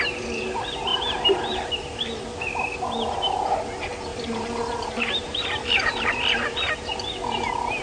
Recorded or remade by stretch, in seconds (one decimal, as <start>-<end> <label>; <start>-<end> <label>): 0.0-0.9 recorded; 0.9-1.7 remade; 1.7-4.1 recorded; 4.1-6.1 remade; 6.1-7.8 recorded